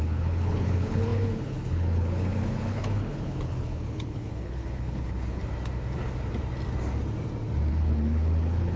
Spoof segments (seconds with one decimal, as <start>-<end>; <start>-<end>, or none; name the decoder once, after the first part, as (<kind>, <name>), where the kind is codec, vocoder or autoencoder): 0.0-5.4 (codec, HILCodec); 7.7-8.8